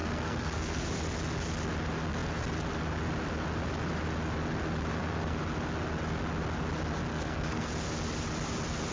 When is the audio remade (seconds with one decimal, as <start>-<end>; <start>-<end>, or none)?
0.0-0.8; 4.9-5.4; 7.1-7.7